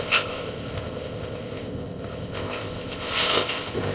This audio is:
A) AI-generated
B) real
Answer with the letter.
A